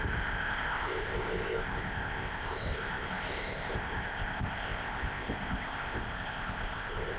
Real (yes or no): no